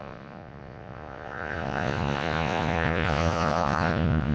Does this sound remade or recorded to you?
remade